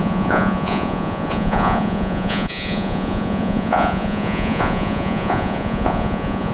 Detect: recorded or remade remade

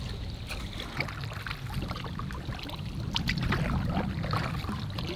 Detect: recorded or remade recorded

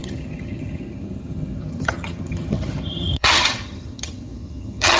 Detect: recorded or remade remade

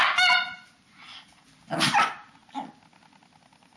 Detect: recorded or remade recorded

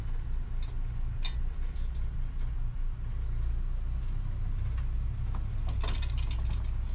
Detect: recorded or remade recorded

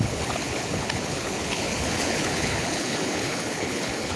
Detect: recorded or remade remade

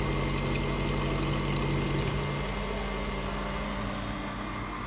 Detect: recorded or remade recorded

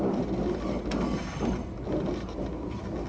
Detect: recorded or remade recorded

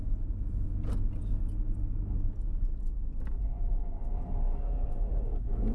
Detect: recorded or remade recorded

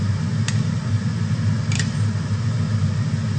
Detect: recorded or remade recorded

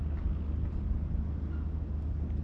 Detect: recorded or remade recorded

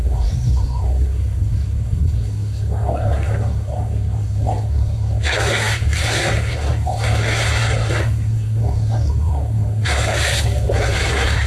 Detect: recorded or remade remade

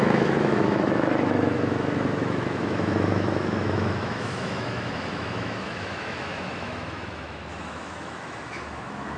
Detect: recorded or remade remade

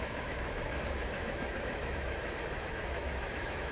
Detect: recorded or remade remade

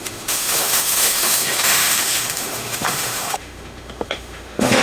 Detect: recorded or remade remade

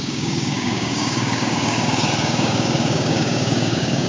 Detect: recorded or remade remade